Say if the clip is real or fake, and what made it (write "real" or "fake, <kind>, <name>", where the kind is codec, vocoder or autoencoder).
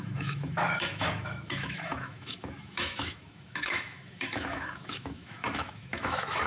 fake, autoencoder, DAC-VAE